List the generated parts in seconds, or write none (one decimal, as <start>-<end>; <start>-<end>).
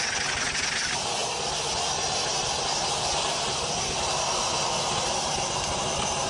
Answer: none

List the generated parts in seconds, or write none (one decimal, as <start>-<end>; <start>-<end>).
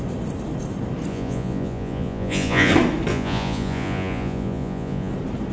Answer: 1.1-2.7; 3.1-5.1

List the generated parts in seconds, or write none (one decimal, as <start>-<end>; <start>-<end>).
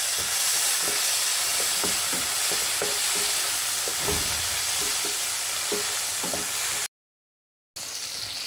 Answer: 1.5-2.8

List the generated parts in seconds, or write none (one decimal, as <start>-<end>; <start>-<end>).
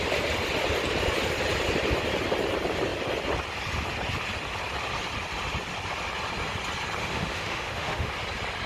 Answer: 7.0-8.1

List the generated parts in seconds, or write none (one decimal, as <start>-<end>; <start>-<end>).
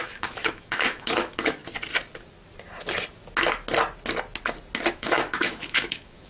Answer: 0.0-1.6; 4.9-6.3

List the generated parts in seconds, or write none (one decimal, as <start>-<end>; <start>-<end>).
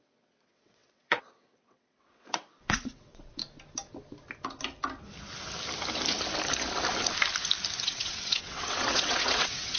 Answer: 0.0-3.4; 7.8-9.8